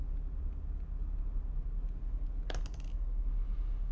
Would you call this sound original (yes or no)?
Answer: yes